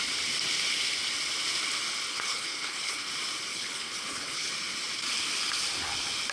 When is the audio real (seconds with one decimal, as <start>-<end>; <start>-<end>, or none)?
0.0-2.1; 3.1-3.5; 4.5-6.3